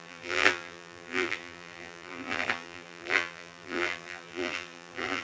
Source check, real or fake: fake